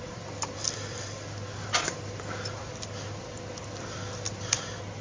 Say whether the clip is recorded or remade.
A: recorded